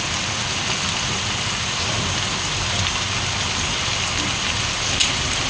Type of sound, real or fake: real